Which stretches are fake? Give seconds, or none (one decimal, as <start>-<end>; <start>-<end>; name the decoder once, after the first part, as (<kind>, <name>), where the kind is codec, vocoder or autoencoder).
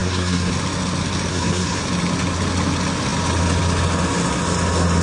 0.0-0.5 (codec, SNAC); 1.3-1.8